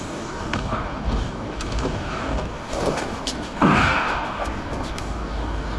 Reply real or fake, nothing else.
fake